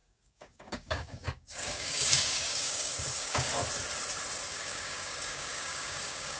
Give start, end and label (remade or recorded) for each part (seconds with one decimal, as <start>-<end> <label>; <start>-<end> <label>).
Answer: 0.0-3.5 remade; 3.5-4.5 recorded; 4.5-6.4 remade